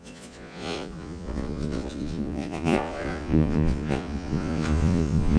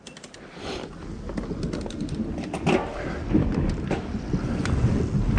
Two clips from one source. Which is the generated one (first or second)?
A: first